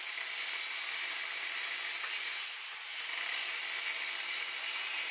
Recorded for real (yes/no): no